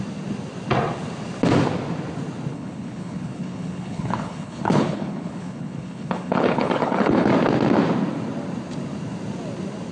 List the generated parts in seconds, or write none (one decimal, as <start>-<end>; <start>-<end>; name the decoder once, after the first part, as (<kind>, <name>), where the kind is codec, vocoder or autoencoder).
2.5-7.3 (codec, HILCodec)